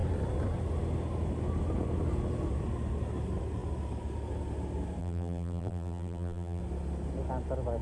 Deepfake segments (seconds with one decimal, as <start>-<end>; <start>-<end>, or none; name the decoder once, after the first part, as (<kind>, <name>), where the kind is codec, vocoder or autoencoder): 5.0-6.6 (vocoder, BigVGAN v2)